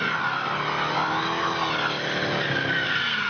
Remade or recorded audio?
recorded